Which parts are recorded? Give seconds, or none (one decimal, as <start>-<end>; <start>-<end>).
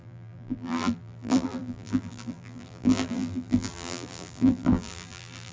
none